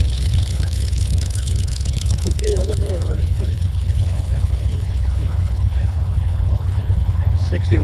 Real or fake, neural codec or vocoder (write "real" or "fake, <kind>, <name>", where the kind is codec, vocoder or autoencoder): fake, codec, HILCodec